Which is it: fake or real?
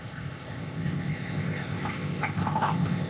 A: fake